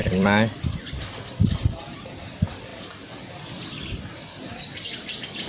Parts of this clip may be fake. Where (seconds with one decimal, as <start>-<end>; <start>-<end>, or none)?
0.0-2.7; 4.5-5.5